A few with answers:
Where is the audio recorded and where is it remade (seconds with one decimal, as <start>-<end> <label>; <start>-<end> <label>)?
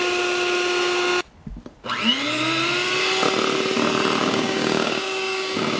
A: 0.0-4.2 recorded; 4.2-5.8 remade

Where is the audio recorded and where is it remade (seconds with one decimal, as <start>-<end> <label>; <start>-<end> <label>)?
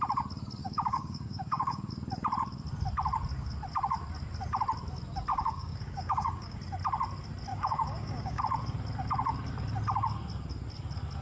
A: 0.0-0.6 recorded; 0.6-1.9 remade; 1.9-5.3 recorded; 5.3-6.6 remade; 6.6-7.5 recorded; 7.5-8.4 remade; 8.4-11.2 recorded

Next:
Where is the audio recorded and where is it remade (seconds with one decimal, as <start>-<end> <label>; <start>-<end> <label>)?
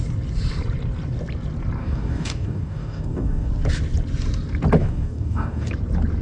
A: 0.0-1.8 recorded; 1.8-3.5 remade; 3.5-4.8 recorded; 4.8-5.7 remade; 5.7-6.2 recorded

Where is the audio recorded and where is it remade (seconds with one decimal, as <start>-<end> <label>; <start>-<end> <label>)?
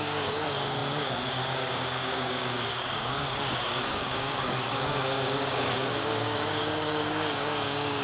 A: 0.0-8.0 remade